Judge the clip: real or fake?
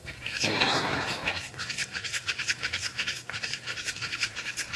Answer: fake